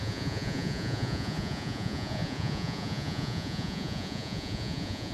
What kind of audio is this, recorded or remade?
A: remade